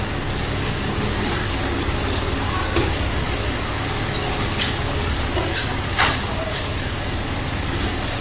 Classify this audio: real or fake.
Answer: fake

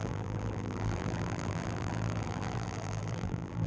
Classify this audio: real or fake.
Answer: fake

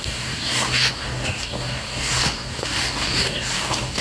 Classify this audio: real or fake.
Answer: fake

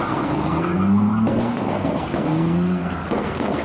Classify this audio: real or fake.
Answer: fake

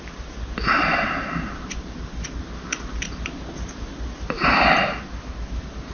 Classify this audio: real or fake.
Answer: real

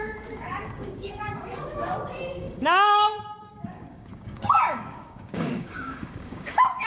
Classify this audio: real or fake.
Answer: fake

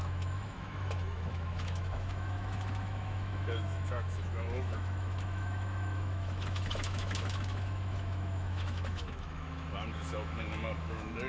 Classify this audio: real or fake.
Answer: fake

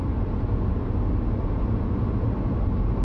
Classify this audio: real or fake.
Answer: real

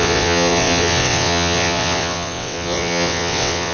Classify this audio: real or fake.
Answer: fake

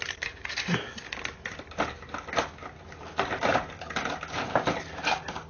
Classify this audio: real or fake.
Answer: real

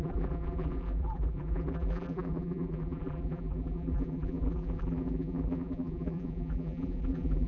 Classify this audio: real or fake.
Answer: fake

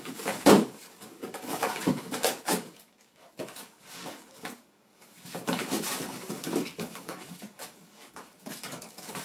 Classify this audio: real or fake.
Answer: fake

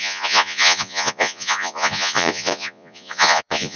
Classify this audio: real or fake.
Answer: fake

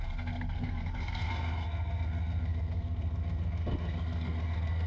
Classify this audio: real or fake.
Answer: fake